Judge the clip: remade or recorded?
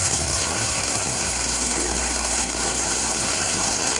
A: remade